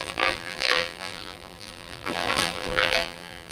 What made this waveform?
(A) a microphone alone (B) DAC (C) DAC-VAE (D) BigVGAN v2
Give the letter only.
D